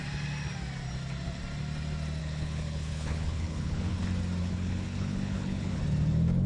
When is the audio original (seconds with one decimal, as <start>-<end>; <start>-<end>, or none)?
0.0-2.2; 4.0-4.4; 5.8-6.5